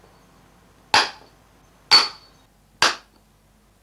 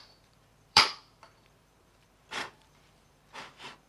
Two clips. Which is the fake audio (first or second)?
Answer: second